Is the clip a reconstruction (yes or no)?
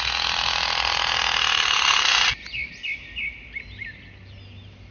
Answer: no